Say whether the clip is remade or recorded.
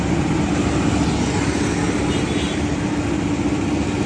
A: recorded